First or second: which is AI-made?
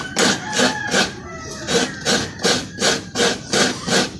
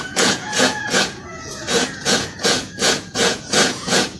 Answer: second